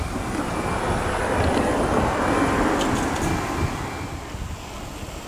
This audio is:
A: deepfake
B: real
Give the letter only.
B